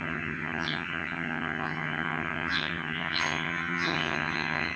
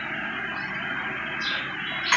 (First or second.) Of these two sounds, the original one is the second